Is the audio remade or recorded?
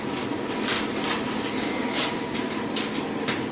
recorded